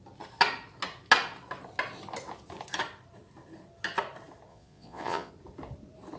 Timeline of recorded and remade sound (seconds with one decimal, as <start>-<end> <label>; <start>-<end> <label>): 0.0-4.5 recorded; 4.5-5.3 remade; 5.3-6.2 recorded